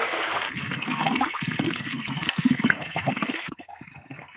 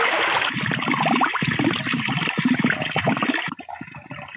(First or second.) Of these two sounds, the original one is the second